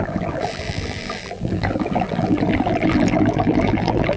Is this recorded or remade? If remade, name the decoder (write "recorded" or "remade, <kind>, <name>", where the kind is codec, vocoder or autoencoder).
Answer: remade, vocoder, BigVGAN v2